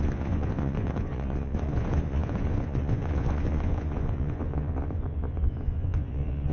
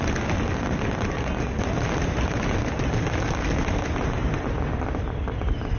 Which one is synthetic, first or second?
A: first